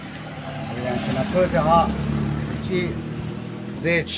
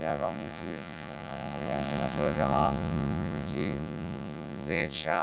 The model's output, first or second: second